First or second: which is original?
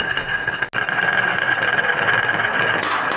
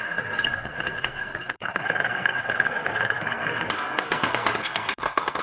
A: first